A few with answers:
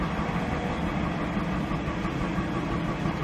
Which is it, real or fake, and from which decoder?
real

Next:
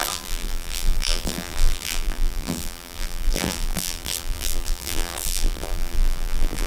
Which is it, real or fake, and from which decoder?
fake, vocoder, BigVGAN v2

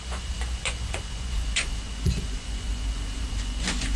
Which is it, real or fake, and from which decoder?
fake, vocoder, Vocos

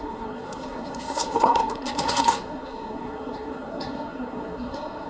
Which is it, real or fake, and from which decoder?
fake, codec, SNAC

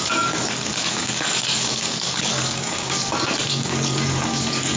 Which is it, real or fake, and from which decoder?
fake, codec, DAC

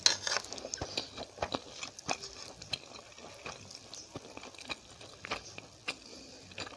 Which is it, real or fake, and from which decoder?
real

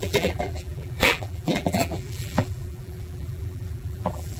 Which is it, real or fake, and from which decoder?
fake, vocoder, BigVGAN v2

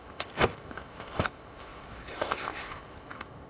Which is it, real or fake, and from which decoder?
fake, codec, ZipCodec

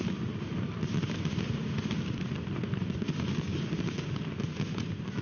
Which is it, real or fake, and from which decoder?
real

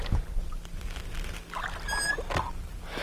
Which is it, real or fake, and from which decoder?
real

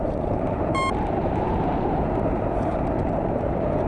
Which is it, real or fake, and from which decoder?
fake, vocoder, BigVGAN v2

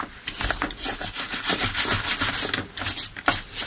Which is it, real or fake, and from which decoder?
real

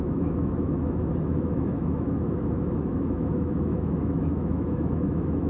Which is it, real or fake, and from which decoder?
fake, autoencoder, DAC-VAE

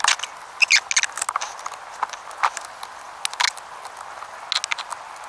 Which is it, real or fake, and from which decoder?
real